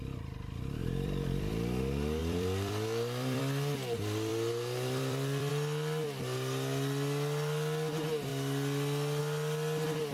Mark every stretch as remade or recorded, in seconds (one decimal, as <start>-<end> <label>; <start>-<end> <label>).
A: 0.0-0.8 recorded; 0.8-1.5 remade; 1.5-2.2 recorded; 2.2-3.4 remade; 3.4-4.3 recorded; 4.3-5.5 remade; 5.5-10.1 recorded